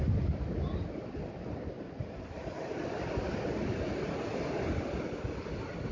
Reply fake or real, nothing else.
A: real